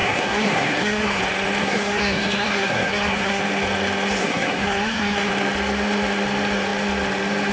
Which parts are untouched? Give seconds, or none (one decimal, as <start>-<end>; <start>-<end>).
1.2-1.6; 3.4-4.2; 5.3-7.5